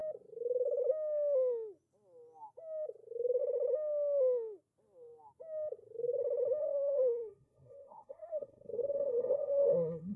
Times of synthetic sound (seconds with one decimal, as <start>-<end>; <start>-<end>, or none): 6.6-10.2